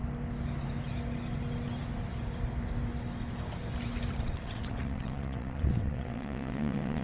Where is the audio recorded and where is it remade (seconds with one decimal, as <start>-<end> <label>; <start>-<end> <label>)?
0.0-4.2 recorded; 4.2-7.0 remade